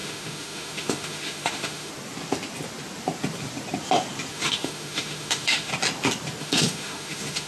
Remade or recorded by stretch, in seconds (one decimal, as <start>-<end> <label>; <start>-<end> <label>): 0.0-1.9 remade; 1.9-4.3 recorded; 4.3-5.7 remade; 5.7-6.4 recorded; 6.4-7.5 remade